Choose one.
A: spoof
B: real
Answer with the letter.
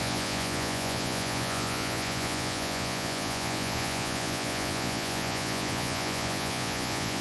A